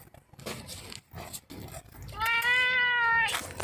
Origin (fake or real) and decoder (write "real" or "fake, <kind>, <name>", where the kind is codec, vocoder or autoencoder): real